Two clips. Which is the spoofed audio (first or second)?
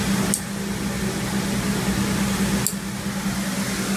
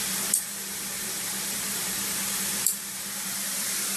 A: second